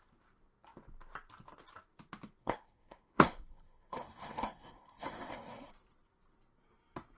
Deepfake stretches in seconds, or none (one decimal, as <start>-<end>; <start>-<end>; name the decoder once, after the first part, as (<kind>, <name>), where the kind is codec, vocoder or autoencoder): 2.4-5.7 (codec, SNAC)